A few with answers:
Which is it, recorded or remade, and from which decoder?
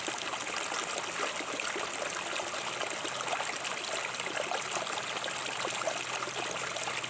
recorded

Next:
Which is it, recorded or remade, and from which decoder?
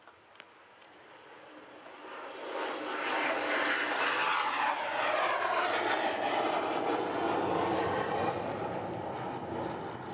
recorded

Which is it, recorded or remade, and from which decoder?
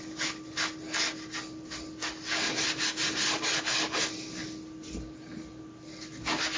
recorded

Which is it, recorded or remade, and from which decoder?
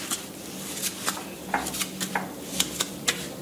recorded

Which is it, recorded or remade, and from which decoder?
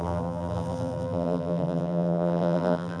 remade, vocoder, BigVGAN v2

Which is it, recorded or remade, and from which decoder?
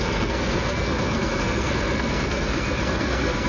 remade, codec, SNAC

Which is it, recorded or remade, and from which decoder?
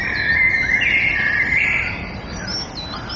recorded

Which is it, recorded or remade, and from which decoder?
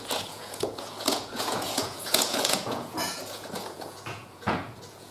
remade, vocoder, Vocos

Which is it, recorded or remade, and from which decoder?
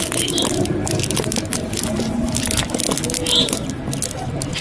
recorded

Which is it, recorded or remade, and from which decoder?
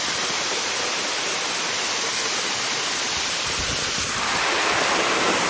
recorded